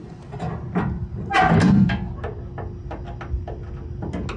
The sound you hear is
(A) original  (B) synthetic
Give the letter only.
A